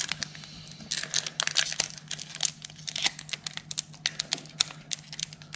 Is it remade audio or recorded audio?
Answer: recorded